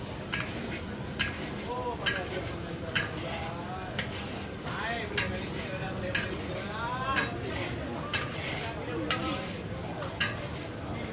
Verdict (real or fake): real